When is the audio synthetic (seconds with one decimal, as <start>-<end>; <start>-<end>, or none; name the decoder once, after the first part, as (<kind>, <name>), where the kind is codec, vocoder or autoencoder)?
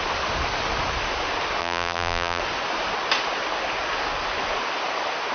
1.6-2.4 (vocoder, BigVGAN v2)